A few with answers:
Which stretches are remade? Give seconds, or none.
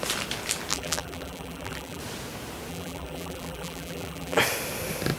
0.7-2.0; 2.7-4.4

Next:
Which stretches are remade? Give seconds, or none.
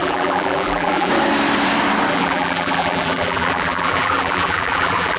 0.0-1.1; 2.1-5.2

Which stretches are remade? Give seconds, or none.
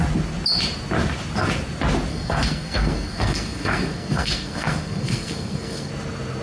2.1-5.9